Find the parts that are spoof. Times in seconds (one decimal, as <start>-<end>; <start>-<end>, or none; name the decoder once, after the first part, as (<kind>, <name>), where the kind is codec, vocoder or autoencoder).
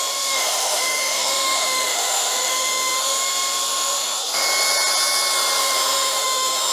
0.0-4.4 (autoencoder, DAC-VAE); 5.6-6.7